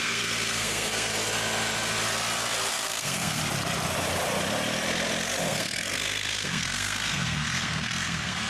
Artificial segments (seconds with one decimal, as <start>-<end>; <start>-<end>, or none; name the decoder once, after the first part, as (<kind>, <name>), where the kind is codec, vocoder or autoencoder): 0.0-1.1 (codec, SNAC); 2.7-3.4; 5.4-8.5